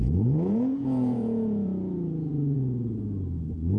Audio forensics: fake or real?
fake